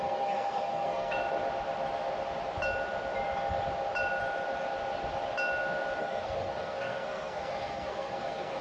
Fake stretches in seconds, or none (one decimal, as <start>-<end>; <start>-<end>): 0.0-1.2; 6.0-8.6